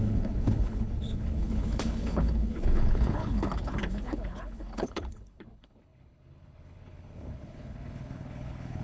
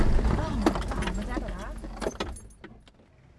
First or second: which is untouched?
second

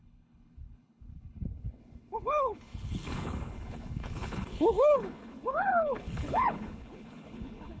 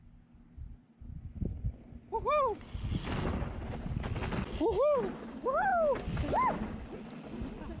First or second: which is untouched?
second